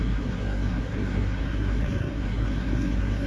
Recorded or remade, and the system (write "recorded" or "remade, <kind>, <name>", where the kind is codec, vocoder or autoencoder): remade, codec, SNAC